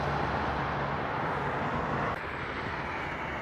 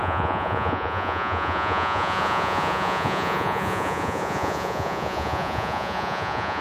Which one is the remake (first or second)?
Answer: second